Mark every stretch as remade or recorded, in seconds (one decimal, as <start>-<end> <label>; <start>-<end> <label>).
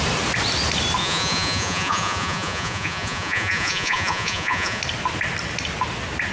0.0-1.0 recorded; 1.0-4.8 remade; 4.8-6.3 recorded